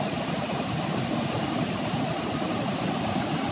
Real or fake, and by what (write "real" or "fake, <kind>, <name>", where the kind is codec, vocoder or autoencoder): real